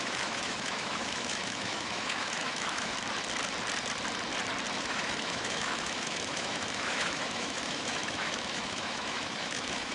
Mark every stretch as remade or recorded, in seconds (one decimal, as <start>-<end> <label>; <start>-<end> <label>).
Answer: 0.0-2.9 remade; 2.9-4.8 recorded; 4.8-9.9 remade